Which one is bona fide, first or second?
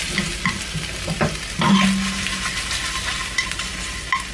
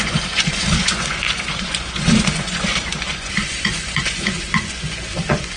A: first